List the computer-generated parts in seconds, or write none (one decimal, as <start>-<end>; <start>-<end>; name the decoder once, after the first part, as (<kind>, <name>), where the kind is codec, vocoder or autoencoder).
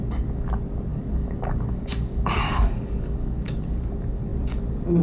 0.9-3.9 (codec, DAC)